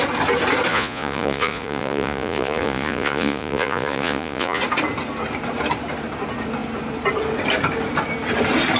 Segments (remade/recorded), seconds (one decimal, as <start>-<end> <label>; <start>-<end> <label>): 0.0-0.7 recorded; 0.7-4.6 remade; 4.6-8.8 recorded